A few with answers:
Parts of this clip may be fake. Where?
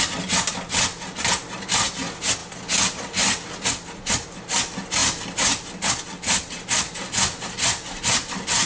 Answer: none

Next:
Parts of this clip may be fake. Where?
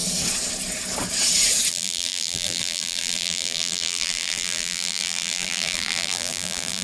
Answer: 1.7-6.8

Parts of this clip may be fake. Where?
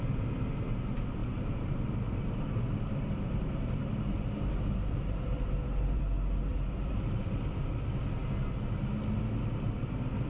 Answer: 1.2-6.0; 6.5-7.2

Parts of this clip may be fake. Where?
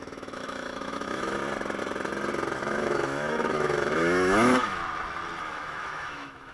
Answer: 0.0-1.4; 2.6-4.8; 5.4-6.5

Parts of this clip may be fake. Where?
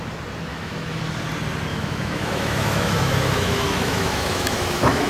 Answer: 0.5-1.0; 1.7-5.1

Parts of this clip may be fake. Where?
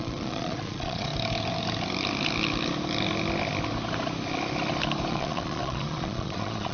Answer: 0.0-1.1; 5.1-6.7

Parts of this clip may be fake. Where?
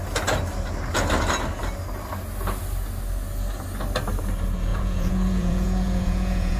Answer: 4.7-6.6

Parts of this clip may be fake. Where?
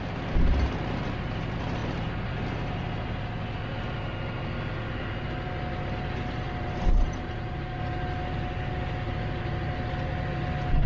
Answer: 7.0-7.8